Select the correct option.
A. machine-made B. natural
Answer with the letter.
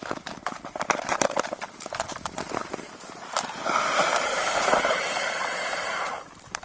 A